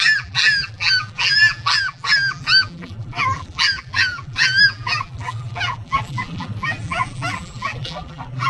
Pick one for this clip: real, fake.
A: fake